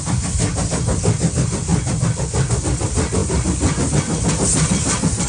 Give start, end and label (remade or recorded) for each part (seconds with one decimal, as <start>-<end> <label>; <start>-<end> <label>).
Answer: 0.0-5.3 recorded